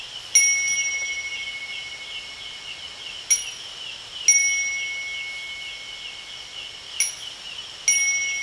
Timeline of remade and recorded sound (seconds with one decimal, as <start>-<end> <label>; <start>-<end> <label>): 0.0-8.4 recorded